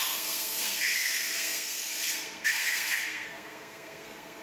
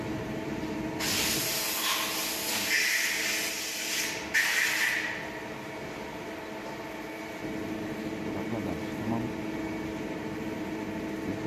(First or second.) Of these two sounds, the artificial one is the first